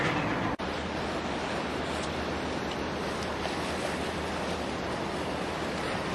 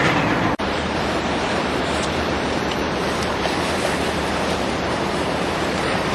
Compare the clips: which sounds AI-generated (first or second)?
second